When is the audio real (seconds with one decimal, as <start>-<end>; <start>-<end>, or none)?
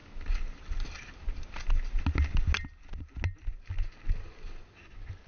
0.0-5.3